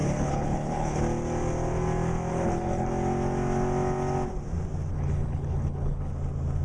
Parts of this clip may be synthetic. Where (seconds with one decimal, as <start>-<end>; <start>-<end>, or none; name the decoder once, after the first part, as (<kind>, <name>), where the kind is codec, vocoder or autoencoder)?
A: 0.0-1.0 (codec, HILCodec); 2.3-2.9; 4.9-6.1